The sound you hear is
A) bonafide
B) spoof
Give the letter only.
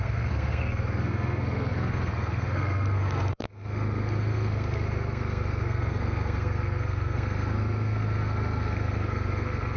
B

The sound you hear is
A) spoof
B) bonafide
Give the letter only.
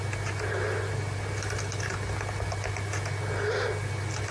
B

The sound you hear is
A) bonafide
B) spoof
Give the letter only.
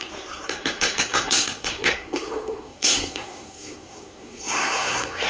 B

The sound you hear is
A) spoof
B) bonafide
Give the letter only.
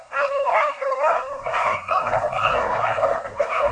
A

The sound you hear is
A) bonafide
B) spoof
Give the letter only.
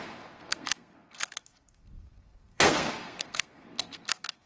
B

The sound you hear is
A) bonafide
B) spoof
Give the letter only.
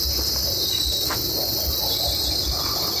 A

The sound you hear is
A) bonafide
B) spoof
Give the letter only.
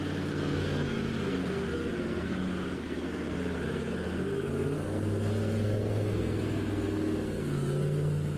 B